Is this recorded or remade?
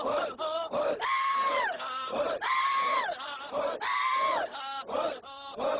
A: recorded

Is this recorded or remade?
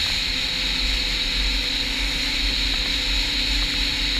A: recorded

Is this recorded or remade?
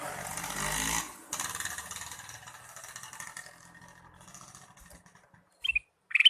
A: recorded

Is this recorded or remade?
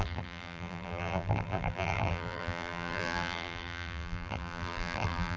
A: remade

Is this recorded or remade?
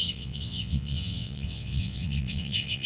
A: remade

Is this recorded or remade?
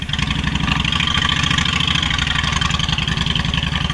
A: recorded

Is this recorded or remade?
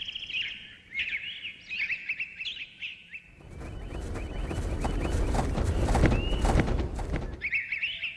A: recorded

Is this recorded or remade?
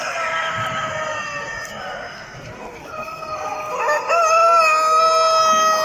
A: recorded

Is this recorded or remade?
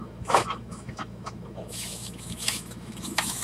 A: remade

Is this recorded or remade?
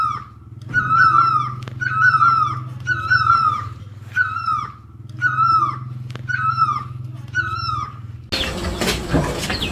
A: recorded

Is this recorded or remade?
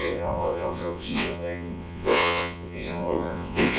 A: remade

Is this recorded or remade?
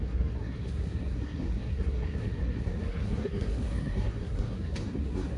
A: remade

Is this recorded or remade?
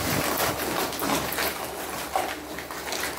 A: recorded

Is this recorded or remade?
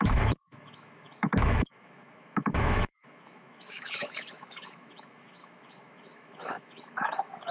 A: remade